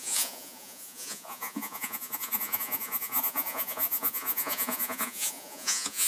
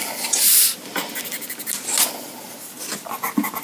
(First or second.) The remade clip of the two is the first